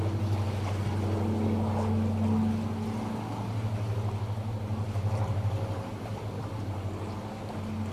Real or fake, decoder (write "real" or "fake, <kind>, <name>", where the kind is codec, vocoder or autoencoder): real